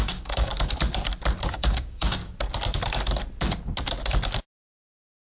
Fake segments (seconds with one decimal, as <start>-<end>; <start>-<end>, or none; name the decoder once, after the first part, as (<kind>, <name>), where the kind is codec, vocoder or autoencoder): 0.0-0.5 (codec, DAC); 1.5-2.2